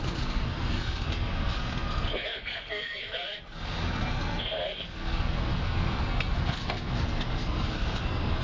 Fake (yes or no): yes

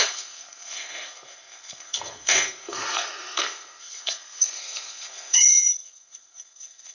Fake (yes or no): yes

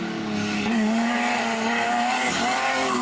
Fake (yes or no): yes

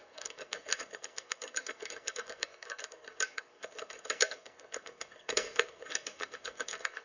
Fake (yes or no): yes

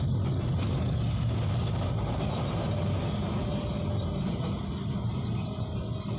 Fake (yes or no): no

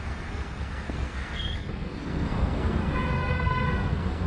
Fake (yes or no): yes